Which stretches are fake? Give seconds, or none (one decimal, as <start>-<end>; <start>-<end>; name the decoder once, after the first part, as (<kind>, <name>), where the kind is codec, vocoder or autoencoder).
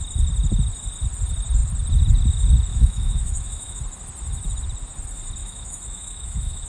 2.7-3.8 (autoencoder, DAC-VAE); 5.4-6.7